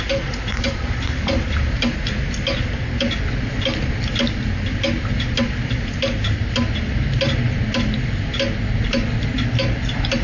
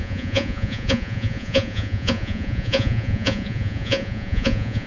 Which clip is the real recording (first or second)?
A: first